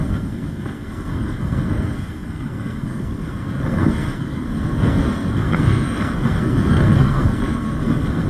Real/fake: fake